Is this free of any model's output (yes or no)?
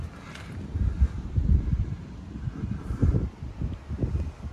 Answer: yes